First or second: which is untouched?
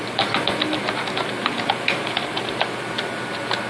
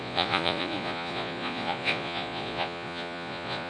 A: first